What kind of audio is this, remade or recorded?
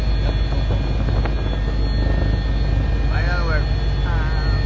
recorded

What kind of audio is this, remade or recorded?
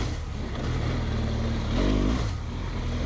recorded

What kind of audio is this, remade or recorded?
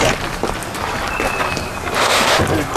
recorded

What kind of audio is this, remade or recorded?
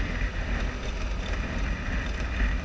recorded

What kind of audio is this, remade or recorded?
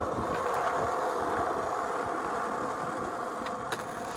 recorded